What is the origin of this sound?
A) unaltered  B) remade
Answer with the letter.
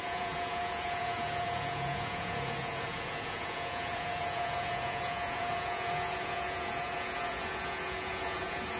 B